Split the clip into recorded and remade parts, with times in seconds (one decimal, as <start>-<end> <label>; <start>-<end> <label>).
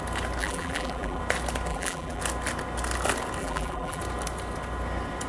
0.0-0.4 recorded; 0.4-1.2 remade; 1.2-1.7 recorded; 1.7-2.2 remade; 2.2-3.4 recorded; 3.4-4.0 remade; 4.0-5.3 recorded